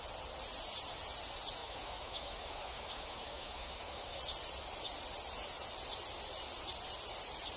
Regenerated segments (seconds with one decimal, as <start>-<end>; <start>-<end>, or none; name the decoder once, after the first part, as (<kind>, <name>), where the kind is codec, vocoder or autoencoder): 1.6-4.2 (autoencoder, DAC-VAE)